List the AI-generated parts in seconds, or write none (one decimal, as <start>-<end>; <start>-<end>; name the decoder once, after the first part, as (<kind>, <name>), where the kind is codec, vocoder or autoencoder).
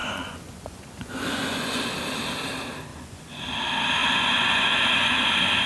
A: 0.0-1.8 (vocoder, Vocos); 2.9-3.5; 4.0-5.3